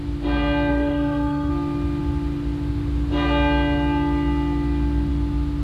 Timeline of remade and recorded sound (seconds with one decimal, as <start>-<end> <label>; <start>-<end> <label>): 0.0-0.7 recorded; 0.7-1.5 remade; 1.5-5.6 recorded